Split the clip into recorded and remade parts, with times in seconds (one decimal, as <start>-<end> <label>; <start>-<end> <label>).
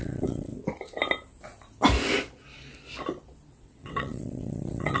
0.0-0.5 remade; 0.5-3.5 recorded; 3.5-5.0 remade